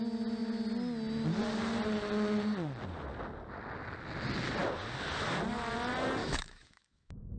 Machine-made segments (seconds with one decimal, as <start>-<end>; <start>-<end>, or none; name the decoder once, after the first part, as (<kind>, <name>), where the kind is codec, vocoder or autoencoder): 6.2-7.4 (autoencoder, DAC-VAE)